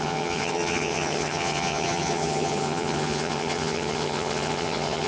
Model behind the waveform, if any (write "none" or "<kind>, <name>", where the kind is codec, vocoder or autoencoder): vocoder, HiFi-GAN